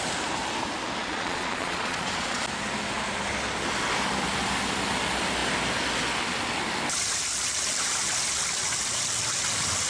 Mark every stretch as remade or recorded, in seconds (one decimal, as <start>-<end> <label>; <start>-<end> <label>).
0.0-1.0 recorded; 1.0-2.4 remade; 2.4-9.9 recorded